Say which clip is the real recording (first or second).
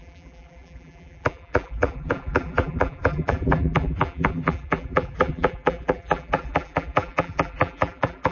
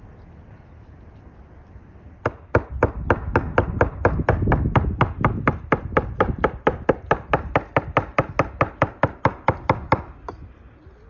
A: second